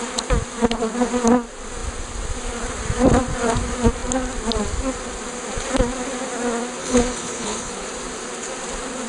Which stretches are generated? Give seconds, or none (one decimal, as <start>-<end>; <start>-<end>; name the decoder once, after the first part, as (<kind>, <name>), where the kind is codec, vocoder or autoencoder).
6.8-7.7 (codec, HILCodec)

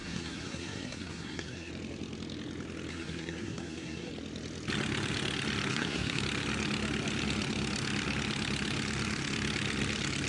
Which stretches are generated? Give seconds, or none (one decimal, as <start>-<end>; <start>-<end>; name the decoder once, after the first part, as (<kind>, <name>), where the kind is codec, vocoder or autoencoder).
0.0-1.7 (codec, SNAC); 2.9-4.1; 5.7-6.2

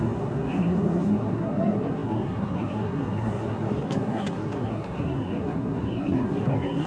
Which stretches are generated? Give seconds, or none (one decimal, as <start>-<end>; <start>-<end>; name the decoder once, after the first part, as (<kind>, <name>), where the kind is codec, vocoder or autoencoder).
0.0-6.9 (codec, SNAC)

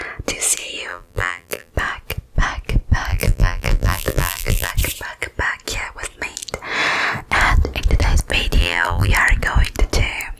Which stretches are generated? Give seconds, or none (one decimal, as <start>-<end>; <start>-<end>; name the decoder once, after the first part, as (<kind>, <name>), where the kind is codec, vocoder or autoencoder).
0.9-1.7 (vocoder, BigVGAN v2); 3.1-4.7; 8.6-9.1

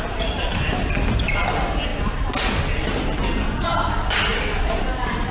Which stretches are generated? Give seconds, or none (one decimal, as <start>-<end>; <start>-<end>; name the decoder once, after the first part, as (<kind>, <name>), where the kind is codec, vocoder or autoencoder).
none

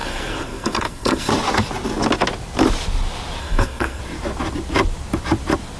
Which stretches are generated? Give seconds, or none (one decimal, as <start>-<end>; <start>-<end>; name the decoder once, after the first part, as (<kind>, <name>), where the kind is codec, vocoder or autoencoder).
0.0-1.3 (codec, SNAC); 3.4-4.0